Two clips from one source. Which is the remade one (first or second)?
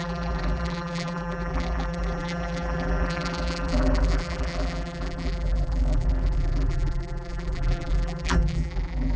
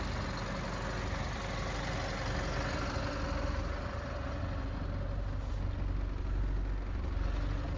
first